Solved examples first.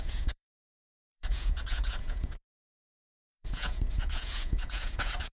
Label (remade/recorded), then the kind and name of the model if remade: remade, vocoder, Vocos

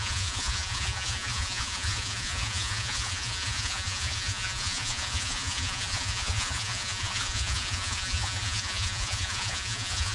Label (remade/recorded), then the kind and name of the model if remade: remade, vocoder, Vocos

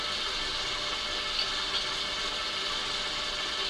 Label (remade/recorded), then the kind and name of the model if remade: recorded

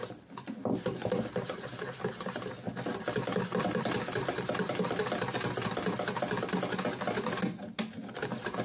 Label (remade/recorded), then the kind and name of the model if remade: recorded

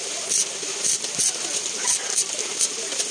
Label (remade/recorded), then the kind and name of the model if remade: recorded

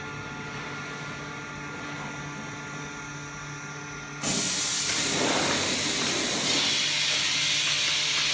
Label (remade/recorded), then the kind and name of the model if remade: recorded